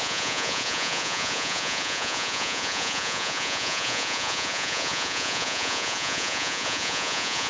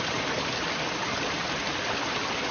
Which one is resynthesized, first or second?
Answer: first